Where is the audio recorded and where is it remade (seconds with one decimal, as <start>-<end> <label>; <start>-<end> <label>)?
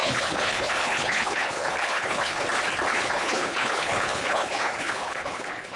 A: 0.0-2.4 remade; 2.4-2.9 recorded; 2.9-5.8 remade